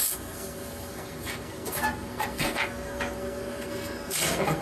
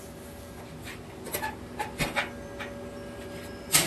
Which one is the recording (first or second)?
second